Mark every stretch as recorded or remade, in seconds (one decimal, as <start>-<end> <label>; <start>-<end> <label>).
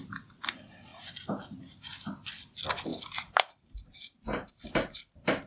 0.0-2.9 recorded; 2.9-5.0 remade; 5.0-5.5 recorded